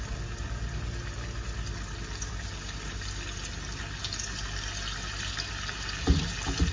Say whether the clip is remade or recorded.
recorded